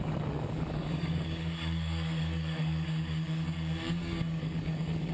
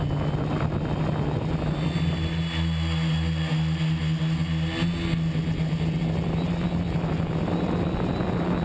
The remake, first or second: first